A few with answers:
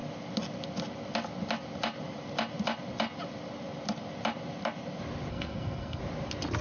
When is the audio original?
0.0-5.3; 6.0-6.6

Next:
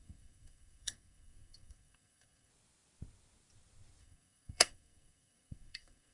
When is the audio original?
2.5-4.0

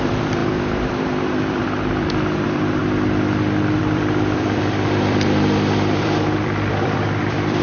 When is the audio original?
2.8-3.8

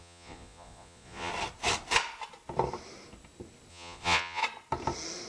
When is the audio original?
1.3-3.7; 4.4-5.3

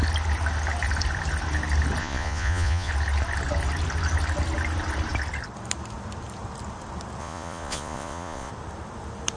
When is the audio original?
0.0-2.0; 2.9-7.2; 8.5-9.4

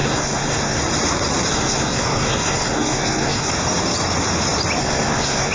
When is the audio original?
0.8-1.5; 3.5-4.8

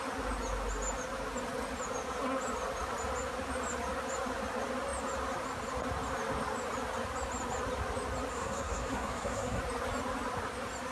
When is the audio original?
0.0-8.3; 9.6-10.9